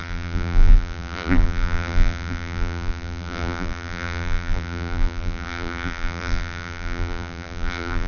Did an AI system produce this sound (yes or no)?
yes